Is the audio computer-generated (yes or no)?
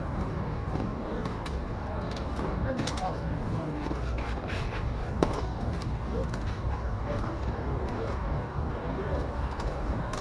yes